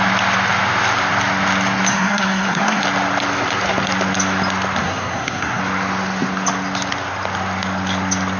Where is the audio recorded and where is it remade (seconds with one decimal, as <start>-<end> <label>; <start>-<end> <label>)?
0.0-1.9 recorded; 1.9-2.8 remade; 2.8-4.8 recorded; 4.8-5.6 remade; 5.6-8.4 recorded